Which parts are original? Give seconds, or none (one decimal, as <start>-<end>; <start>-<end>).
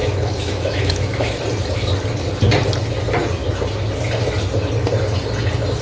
1.4-5.8